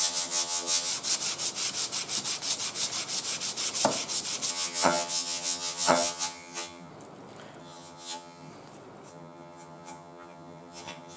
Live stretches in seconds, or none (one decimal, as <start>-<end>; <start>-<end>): 0.9-4.5; 6.9-7.6; 8.5-9.1